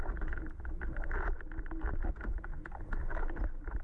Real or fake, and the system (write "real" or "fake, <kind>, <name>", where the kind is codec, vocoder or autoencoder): real